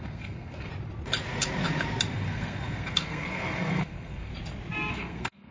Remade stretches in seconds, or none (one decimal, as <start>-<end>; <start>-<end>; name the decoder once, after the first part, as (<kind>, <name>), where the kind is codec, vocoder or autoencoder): 0.0-0.7 (codec, SNAC); 2.1-4.3; 4.9-5.5